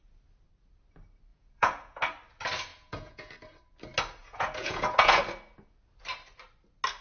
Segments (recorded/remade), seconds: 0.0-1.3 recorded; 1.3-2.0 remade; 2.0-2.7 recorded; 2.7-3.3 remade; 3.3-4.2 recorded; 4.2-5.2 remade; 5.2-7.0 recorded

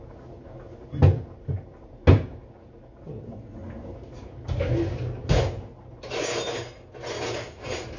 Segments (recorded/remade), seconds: 0.0-8.0 recorded

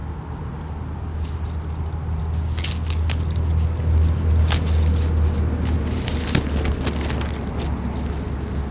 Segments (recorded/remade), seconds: 0.0-8.7 recorded

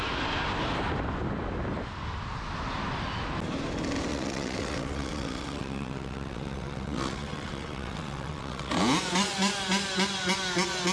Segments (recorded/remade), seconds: 0.0-4.1 recorded; 4.1-8.7 remade; 8.7-10.9 recorded

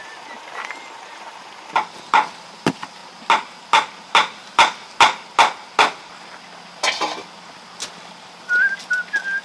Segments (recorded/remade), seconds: 0.0-9.4 recorded